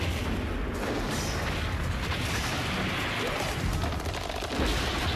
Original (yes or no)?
yes